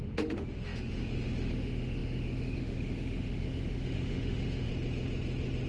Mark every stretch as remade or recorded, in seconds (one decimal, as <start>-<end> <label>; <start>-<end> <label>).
0.0-4.7 remade; 4.7-5.7 recorded